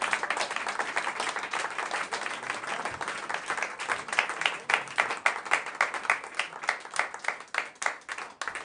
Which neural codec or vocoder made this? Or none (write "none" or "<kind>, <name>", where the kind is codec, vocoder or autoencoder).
none